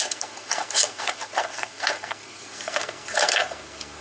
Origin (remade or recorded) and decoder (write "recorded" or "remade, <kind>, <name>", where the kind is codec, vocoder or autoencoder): remade, codec, SNAC